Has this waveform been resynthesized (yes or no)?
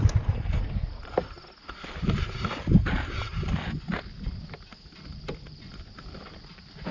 no